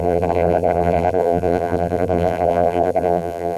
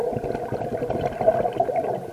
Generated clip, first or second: first